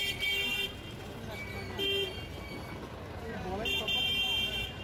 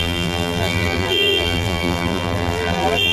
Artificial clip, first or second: second